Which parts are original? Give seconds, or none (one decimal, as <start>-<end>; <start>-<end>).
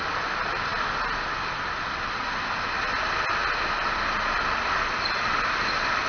0.0-6.1